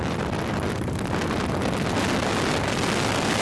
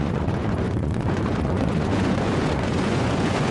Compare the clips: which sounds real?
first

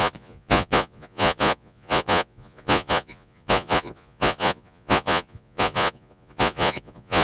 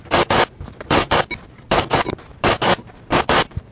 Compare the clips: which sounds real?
second